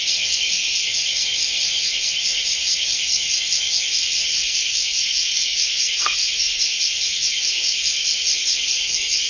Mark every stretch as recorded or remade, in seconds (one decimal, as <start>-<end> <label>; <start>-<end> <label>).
0.0-9.3 remade